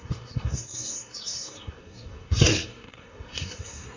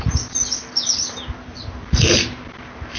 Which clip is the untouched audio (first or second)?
second